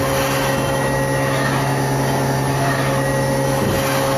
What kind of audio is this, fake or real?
real